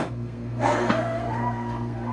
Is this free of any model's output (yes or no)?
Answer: no